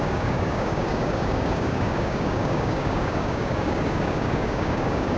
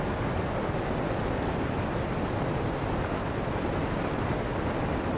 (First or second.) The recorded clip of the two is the second